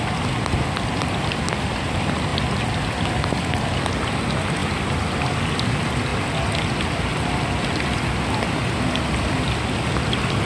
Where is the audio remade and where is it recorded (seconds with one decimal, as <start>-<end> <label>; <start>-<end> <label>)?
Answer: 0.0-10.5 recorded